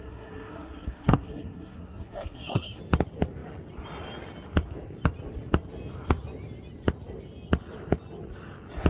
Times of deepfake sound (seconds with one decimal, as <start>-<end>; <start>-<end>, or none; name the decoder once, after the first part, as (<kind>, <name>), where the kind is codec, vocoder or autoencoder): 0.0-2.8 (codec, SNAC)